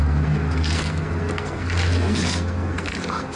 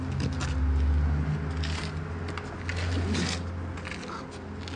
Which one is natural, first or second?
second